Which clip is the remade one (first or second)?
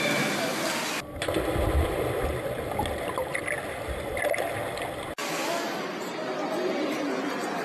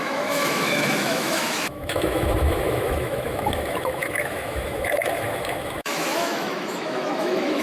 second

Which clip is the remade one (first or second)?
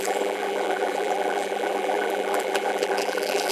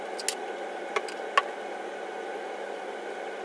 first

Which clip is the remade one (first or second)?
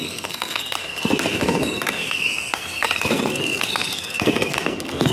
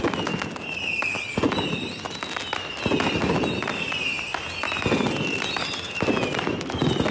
first